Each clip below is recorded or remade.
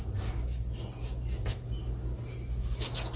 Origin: recorded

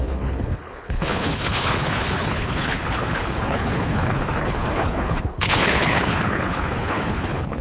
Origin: remade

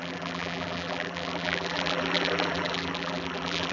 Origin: remade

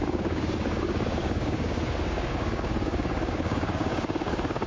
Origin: remade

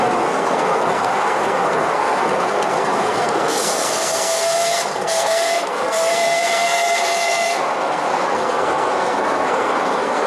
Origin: remade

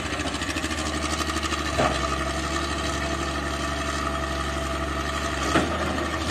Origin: recorded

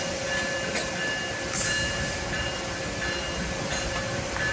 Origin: recorded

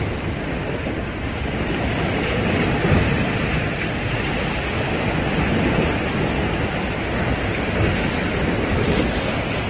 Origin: recorded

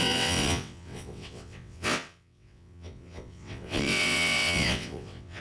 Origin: remade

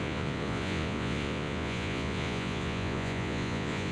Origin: remade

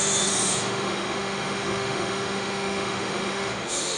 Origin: remade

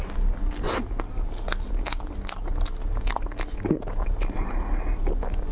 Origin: recorded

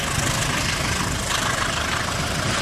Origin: recorded